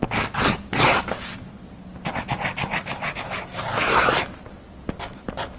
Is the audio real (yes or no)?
yes